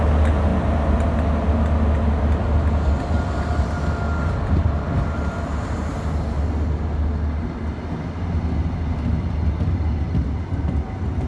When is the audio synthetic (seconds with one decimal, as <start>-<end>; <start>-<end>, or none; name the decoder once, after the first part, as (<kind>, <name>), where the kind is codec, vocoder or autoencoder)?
none